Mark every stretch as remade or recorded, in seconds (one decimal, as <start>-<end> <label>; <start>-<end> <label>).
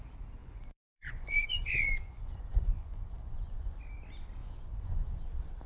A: 0.0-0.4 recorded; 0.4-3.8 remade; 3.8-4.4 recorded; 4.4-5.2 remade; 5.2-5.7 recorded